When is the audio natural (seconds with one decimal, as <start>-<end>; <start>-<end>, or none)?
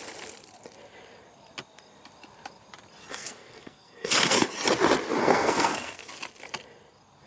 0.0-3.1; 4.5-5.2; 6.1-7.3